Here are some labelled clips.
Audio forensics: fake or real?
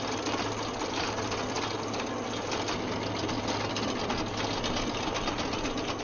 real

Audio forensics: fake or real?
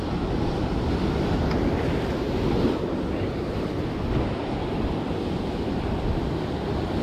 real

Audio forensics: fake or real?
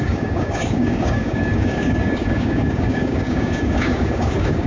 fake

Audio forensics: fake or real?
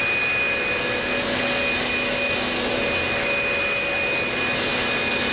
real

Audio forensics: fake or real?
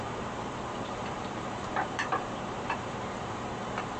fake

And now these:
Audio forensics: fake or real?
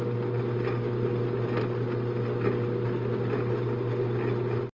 real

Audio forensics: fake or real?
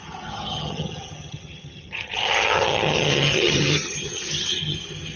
fake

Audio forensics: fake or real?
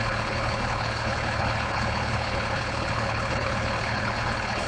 fake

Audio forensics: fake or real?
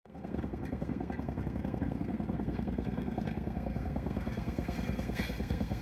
fake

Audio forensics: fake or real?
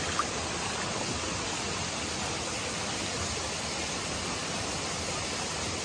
real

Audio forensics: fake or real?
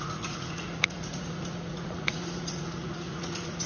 fake